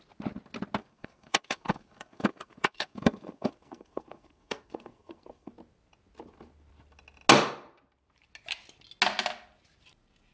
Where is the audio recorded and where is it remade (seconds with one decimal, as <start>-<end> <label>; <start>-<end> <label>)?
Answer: 0.0-0.8 recorded; 0.8-5.5 remade; 5.5-10.3 recorded